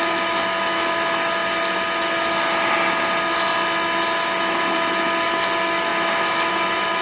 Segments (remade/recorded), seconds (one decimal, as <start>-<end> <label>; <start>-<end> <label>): 0.0-7.0 recorded